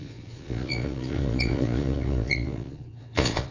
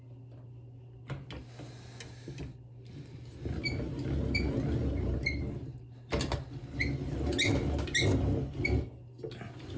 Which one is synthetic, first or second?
first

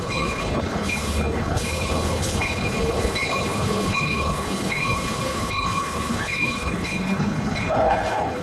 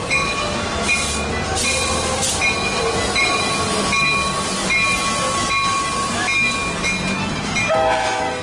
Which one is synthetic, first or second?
first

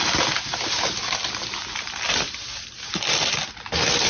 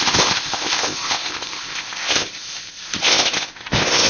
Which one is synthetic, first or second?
second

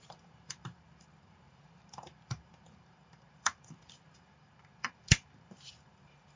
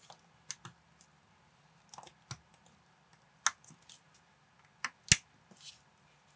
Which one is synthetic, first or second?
first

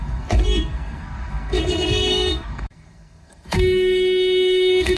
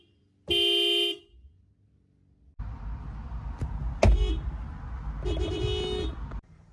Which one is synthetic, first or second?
first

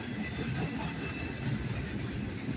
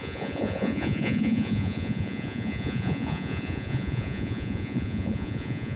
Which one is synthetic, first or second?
second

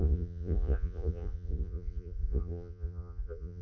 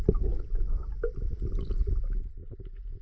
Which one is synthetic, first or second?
first